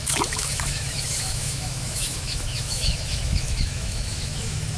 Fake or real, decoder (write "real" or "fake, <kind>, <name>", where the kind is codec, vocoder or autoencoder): fake, autoencoder, DAC-VAE